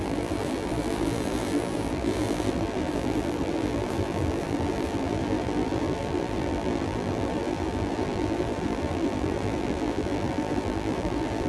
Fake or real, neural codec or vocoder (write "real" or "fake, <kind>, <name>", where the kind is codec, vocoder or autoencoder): fake, vocoder, BigVGAN v2